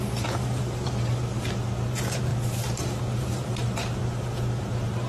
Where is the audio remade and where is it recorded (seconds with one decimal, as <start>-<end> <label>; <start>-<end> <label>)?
0.0-2.3 remade; 2.3-3.0 recorded; 3.0-4.0 remade; 4.0-4.6 recorded; 4.6-5.1 remade